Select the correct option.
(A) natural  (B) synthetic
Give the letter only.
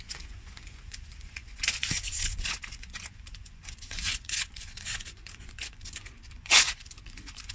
B